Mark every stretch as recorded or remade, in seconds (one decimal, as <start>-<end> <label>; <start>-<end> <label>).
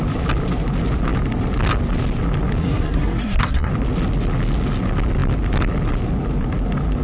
0.0-2.6 recorded; 2.6-3.7 remade; 3.7-7.0 recorded